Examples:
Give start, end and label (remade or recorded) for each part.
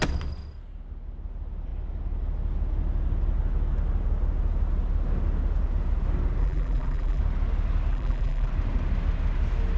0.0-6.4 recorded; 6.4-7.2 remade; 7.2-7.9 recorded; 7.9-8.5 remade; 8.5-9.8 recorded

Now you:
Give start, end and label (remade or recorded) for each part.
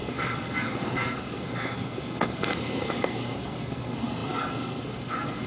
0.0-5.5 remade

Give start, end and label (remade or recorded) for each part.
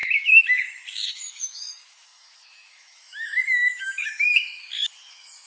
0.0-5.5 remade